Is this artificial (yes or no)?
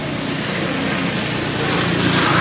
no